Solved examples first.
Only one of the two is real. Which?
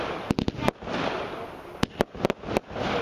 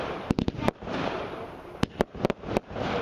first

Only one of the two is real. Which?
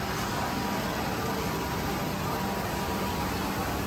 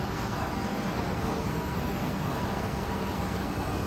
first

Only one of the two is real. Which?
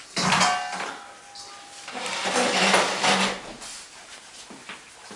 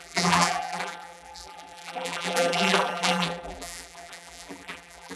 first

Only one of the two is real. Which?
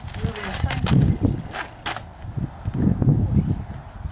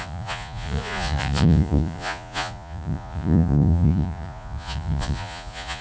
first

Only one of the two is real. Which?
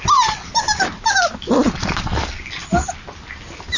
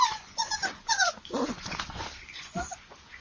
first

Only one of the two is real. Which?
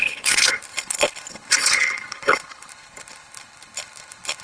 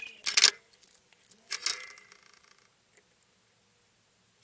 second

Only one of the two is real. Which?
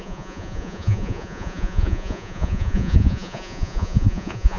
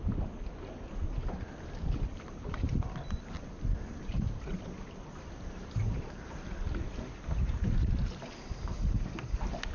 second